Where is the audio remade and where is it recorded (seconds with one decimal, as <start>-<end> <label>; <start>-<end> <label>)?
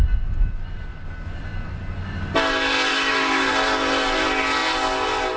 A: 0.0-2.9 recorded; 2.9-3.5 remade; 3.5-5.4 recorded